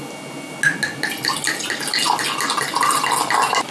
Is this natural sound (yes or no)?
yes